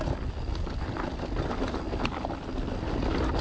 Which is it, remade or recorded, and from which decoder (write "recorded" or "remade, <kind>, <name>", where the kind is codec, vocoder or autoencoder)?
recorded